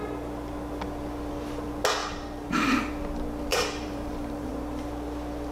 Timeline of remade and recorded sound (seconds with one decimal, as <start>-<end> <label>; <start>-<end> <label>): 0.0-2.0 recorded; 2.0-2.9 remade; 2.9-3.5 recorded; 3.5-4.5 remade; 4.5-5.5 recorded